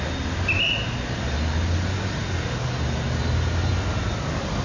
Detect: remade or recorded recorded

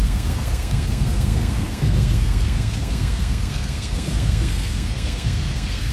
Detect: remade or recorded remade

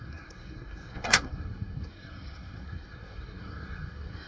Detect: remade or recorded remade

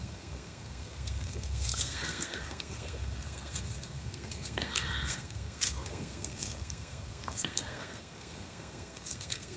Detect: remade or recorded remade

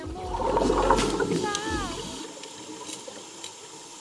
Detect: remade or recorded recorded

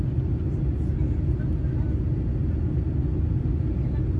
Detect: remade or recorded recorded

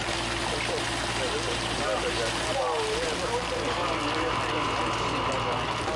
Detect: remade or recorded recorded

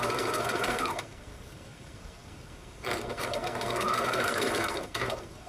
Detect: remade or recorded remade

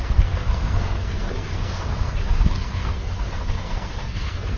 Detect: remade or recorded remade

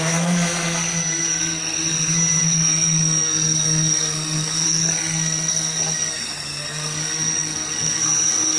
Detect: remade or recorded remade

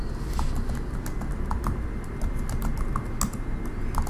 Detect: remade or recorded recorded